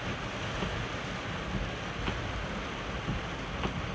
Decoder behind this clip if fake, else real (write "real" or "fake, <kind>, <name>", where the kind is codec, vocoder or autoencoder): real